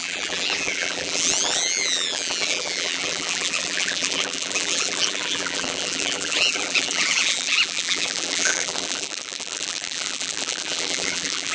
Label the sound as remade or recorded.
remade